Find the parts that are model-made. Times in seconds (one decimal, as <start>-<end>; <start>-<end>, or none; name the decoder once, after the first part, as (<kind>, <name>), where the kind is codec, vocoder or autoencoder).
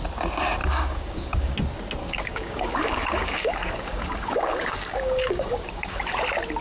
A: 0.6-1.5 (codec, DAC); 2.0-6.0